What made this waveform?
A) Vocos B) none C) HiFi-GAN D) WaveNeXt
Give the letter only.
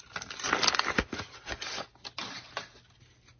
B